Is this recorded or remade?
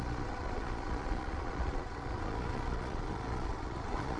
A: remade